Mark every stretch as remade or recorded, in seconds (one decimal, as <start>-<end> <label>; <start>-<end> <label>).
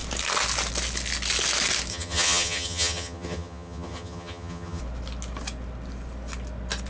0.0-1.9 recorded; 1.9-4.8 remade; 4.8-6.9 recorded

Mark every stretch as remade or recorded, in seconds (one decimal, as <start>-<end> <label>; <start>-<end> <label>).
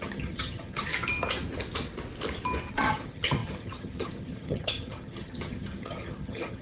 0.0-0.9 remade; 0.9-2.7 recorded; 2.7-6.6 remade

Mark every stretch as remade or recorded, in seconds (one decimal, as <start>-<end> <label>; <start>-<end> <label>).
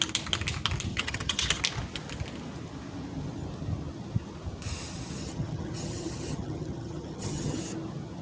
0.0-0.9 recorded; 0.9-1.6 remade; 1.6-5.2 recorded; 5.2-7.6 remade; 7.6-8.2 recorded